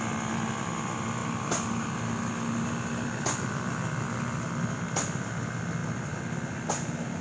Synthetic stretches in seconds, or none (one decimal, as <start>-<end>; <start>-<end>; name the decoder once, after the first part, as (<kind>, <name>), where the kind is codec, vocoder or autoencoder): none